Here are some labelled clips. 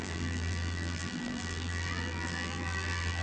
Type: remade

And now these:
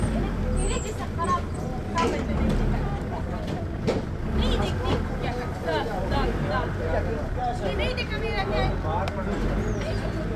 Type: recorded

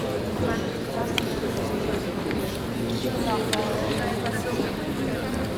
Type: recorded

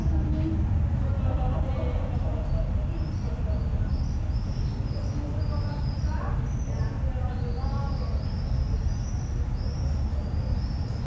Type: recorded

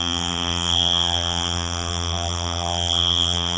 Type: remade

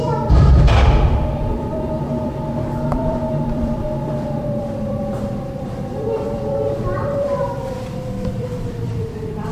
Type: remade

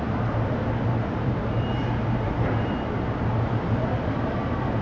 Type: remade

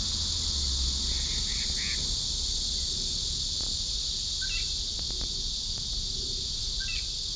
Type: recorded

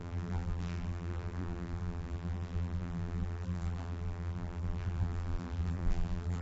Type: remade